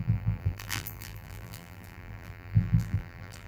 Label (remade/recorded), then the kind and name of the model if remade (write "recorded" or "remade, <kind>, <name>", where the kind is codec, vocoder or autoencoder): remade, vocoder, BigVGAN v2